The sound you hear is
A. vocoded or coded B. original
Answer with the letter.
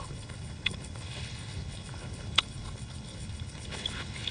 A